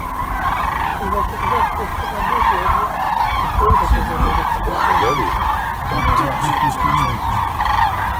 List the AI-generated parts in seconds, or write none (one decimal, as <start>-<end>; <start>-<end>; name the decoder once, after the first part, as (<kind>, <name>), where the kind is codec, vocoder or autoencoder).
none